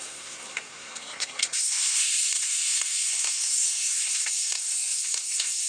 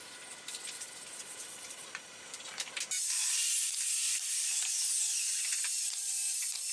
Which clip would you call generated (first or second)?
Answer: first